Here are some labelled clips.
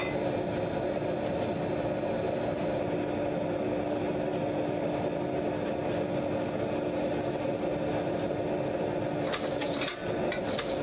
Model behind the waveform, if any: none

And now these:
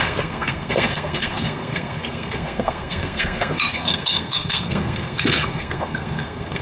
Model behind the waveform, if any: codec, SNAC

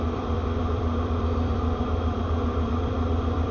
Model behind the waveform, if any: vocoder, BigVGAN v2